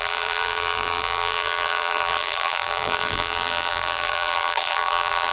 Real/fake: fake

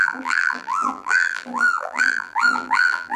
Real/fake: fake